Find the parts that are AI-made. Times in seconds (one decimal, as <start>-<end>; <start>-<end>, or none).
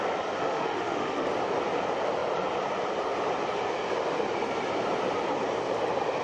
0.4-1.3